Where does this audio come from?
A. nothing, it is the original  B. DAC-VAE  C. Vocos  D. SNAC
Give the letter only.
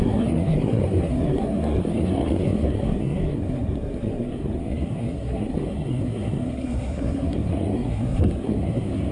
D